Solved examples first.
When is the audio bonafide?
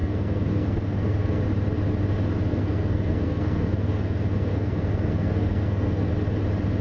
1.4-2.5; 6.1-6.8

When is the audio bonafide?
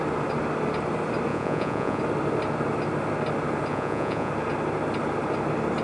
0.0-1.3; 2.0-3.7; 4.3-5.8